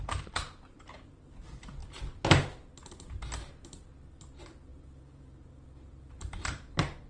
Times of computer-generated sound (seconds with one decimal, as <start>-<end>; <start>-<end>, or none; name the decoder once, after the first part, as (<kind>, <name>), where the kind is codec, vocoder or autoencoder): 0.0-1.8 (vocoder, BigVGAN v2); 4.3-7.1